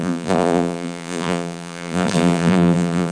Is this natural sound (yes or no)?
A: no